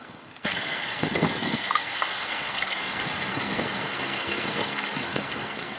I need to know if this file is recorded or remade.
remade